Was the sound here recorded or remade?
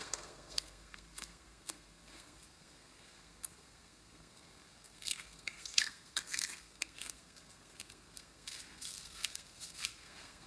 remade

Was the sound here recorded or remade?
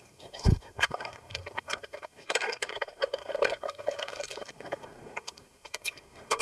remade